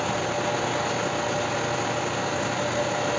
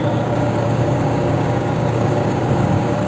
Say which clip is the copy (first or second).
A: second